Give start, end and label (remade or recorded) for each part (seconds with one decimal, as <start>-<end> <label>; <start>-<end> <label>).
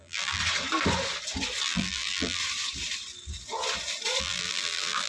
0.0-0.4 remade; 0.4-1.6 recorded; 1.6-2.4 remade; 2.4-4.2 recorded; 4.2-5.1 remade